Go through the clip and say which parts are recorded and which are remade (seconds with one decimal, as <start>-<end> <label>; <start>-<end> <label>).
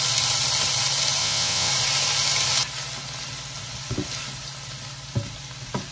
0.0-1.2 recorded; 1.2-1.7 remade; 1.7-5.9 recorded